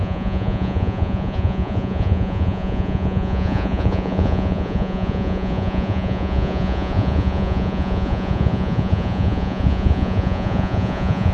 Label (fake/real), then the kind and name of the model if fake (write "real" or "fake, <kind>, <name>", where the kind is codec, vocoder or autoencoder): fake, vocoder, Vocos